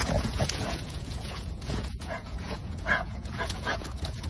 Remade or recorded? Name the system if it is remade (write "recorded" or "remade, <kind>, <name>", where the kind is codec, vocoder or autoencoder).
remade, vocoder, Vocos